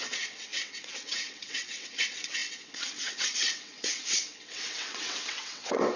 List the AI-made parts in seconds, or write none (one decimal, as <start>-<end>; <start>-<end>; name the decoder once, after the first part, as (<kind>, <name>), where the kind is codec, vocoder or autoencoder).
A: 0.0-6.0 (vocoder, WaveNeXt)